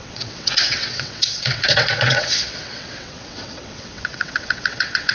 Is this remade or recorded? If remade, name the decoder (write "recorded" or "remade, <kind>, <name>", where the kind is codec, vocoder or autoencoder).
remade, vocoder, WaveNeXt